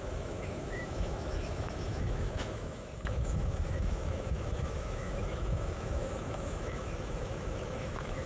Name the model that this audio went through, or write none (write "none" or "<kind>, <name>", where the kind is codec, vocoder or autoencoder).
autoencoder, DAC-VAE